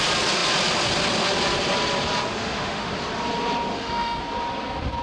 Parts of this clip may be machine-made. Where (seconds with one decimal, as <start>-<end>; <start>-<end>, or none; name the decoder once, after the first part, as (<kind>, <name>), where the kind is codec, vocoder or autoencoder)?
2.3-2.9 (autoencoder, DAC-VAE); 3.7-4.2